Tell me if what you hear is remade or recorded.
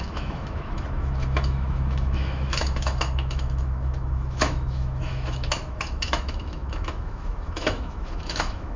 remade